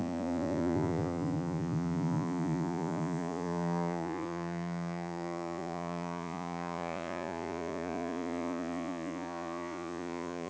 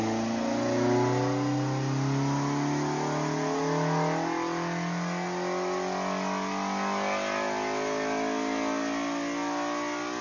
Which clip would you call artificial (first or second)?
first